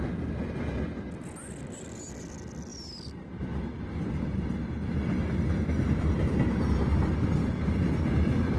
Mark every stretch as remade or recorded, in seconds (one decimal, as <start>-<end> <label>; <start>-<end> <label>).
0.0-8.6 recorded